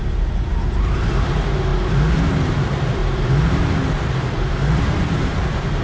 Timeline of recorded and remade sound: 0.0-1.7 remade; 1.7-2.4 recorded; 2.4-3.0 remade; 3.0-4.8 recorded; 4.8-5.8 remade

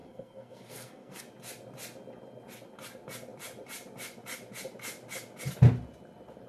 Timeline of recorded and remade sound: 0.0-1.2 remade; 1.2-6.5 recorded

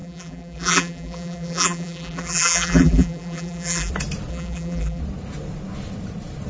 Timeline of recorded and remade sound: 0.0-3.9 remade; 3.9-4.3 recorded; 4.3-5.0 remade; 5.0-6.5 recorded

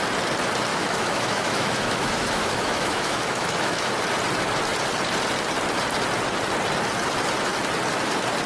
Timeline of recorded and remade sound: 0.0-0.7 recorded; 0.7-3.9 remade; 3.9-8.5 recorded

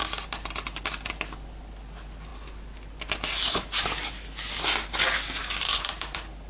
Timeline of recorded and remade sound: 0.0-6.5 recorded